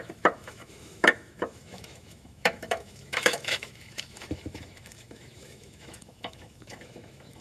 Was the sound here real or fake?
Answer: fake